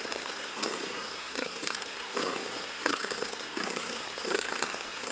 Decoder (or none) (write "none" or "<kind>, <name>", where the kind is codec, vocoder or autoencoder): codec, SNAC